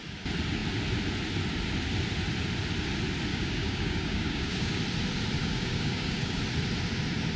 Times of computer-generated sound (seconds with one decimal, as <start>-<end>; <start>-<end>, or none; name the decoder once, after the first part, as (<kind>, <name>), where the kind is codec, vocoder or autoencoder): 3.3-4.8 (codec, DAC); 5.4-6.4